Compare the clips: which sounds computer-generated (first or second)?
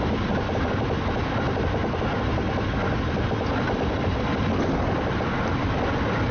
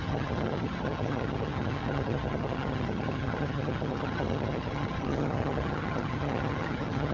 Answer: second